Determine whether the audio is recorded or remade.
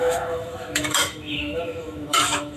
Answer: remade